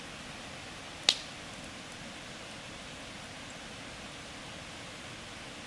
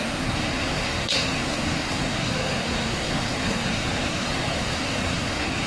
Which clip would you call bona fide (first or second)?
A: first